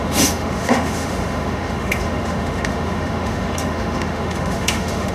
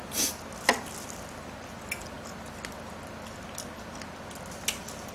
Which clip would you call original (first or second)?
second